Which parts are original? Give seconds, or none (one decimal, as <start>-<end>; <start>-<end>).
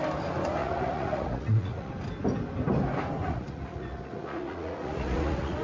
0.0-0.6; 1.9-3.2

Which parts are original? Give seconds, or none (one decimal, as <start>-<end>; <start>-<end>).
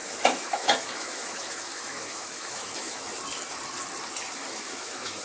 3.1-4.4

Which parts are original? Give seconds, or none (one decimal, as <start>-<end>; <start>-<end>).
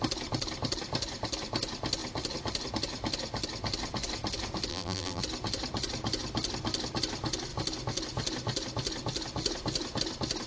0.0-4.7; 5.2-10.5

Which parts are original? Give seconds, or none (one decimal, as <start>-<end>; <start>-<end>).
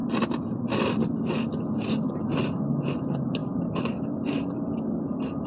0.0-3.4; 4.9-5.5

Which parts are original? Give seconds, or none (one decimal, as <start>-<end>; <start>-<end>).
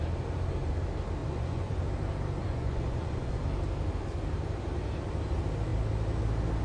0.0-1.2; 1.8-2.4; 3.4-6.6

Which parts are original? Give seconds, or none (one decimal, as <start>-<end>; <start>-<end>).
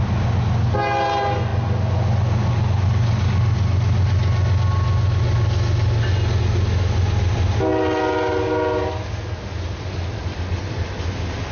0.0-11.5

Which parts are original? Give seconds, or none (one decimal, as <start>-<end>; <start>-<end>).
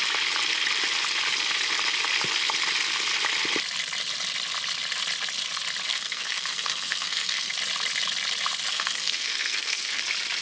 0.0-5.9; 7.5-8.7; 10.0-10.4